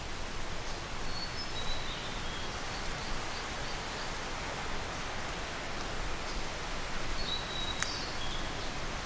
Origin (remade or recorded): recorded